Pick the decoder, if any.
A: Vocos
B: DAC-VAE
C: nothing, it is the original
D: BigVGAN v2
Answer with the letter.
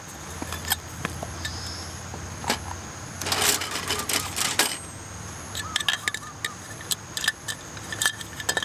C